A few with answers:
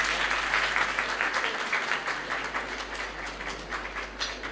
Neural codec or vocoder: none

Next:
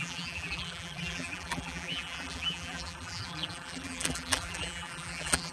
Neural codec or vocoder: vocoder, BigVGAN v2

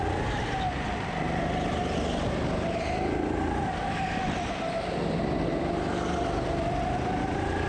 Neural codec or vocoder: none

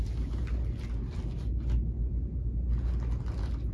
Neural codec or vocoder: none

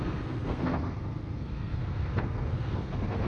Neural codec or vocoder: codec, SNAC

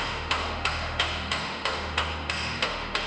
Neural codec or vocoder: autoencoder, DAC-VAE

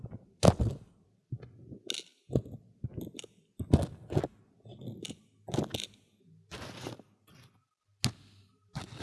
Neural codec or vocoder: none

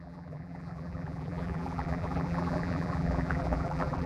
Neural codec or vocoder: vocoder, BigVGAN v2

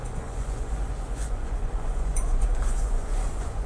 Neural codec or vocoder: vocoder, Vocos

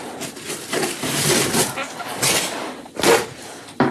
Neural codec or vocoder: none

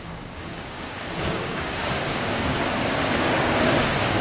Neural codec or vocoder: codec, DAC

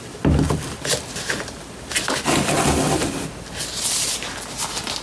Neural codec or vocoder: none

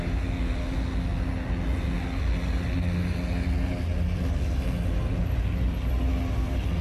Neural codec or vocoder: none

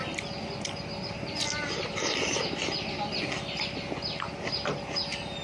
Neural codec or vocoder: none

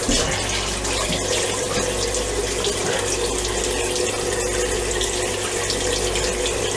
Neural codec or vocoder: none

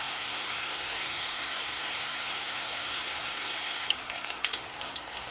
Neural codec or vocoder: codec, SNAC